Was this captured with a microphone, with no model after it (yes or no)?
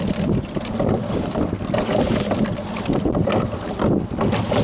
no